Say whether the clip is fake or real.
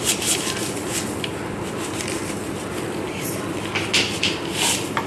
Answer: real